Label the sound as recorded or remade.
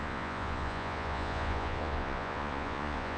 remade